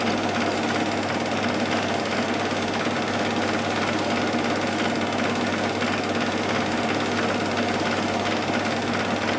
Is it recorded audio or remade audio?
recorded